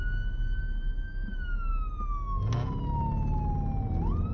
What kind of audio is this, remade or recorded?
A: recorded